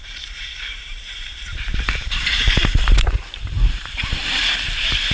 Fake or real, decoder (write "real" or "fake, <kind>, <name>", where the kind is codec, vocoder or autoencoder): fake, vocoder, BigVGAN v2